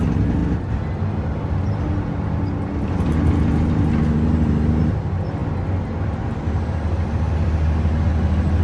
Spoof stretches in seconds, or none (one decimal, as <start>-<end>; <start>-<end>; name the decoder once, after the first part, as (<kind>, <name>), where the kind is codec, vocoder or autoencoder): none